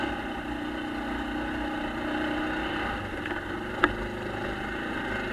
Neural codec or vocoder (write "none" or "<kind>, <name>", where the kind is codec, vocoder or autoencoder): none